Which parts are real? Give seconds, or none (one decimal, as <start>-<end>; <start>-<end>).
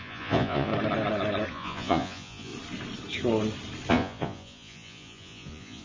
0.7-1.5; 2.5-3.9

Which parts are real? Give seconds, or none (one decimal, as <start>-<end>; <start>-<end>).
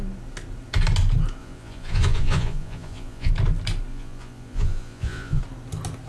0.0-1.4; 3.3-3.9; 5.4-6.1